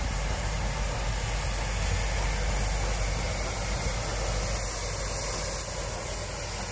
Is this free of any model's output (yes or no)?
yes